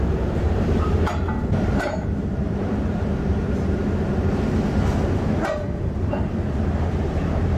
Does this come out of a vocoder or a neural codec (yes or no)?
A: yes